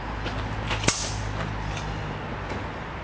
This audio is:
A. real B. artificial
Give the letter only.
A